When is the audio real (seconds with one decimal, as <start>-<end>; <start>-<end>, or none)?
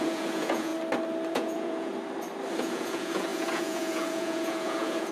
0.7-1.3; 1.9-2.6